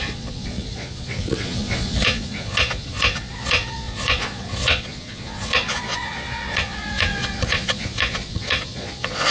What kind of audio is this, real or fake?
fake